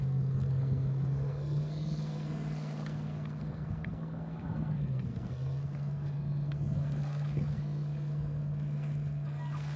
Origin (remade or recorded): remade